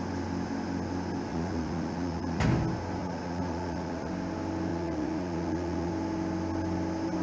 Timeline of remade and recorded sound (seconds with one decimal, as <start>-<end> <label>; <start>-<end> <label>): 0.0-1.3 recorded; 1.3-2.4 remade; 2.4-3.0 recorded; 3.0-4.1 remade; 4.1-4.7 recorded; 4.7-5.9 remade; 5.9-7.2 recorded